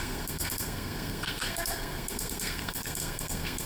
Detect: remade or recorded remade